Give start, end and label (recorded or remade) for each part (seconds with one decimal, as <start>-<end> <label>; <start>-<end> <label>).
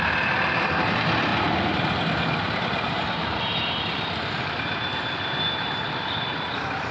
0.0-1.3 recorded; 1.3-3.8 remade; 3.8-6.9 recorded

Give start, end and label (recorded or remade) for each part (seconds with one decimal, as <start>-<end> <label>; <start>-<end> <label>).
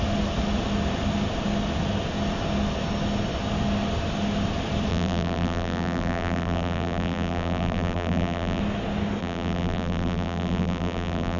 0.0-4.9 recorded; 4.9-8.6 remade; 8.6-9.2 recorded; 9.2-11.4 remade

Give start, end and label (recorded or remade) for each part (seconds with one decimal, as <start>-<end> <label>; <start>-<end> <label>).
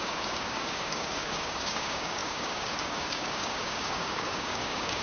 0.0-5.0 remade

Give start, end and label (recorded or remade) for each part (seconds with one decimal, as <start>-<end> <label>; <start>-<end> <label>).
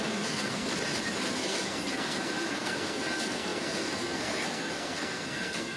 0.0-0.7 remade; 0.7-1.3 recorded; 1.3-5.8 remade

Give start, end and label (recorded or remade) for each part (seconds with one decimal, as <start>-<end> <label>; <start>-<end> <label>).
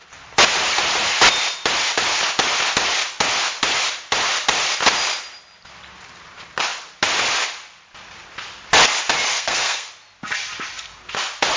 0.0-9.3 recorded; 9.3-9.9 remade; 9.9-11.6 recorded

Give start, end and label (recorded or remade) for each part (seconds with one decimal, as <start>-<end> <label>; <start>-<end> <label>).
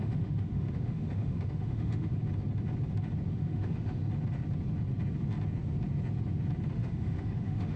0.0-2.2 remade; 2.2-3.3 recorded; 3.3-4.0 remade; 4.0-6.7 recorded; 6.7-7.8 remade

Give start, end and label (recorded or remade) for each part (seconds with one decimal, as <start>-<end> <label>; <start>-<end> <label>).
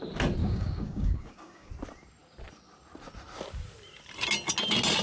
0.0-0.4 recorded; 0.4-1.7 remade; 1.7-5.0 recorded